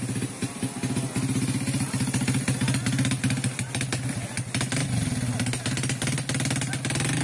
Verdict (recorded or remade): recorded